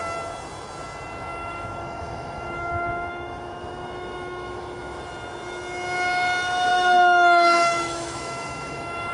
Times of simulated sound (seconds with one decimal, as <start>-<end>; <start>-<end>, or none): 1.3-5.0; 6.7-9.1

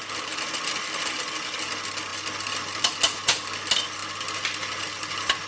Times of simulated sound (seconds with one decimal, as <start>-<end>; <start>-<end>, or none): none

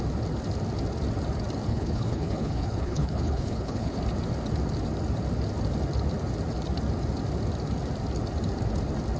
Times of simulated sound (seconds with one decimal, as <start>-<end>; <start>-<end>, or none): 1.7-4.0

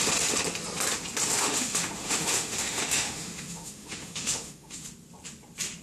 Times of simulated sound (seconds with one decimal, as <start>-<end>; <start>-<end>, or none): 1.3-4.8

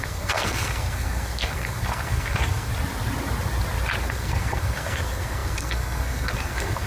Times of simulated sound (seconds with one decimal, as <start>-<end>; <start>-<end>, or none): 0.0-2.7; 4.0-6.9

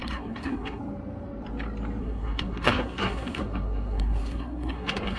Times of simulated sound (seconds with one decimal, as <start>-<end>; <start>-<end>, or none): 0.0-0.8; 2.0-5.2